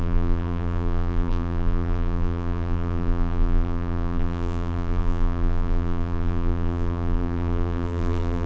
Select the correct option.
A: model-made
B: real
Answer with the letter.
A